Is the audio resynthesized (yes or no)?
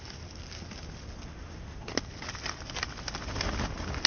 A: no